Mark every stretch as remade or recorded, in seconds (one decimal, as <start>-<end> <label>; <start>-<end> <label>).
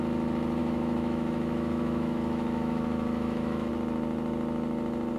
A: 0.0-0.6 recorded; 0.6-3.7 remade; 3.7-5.2 recorded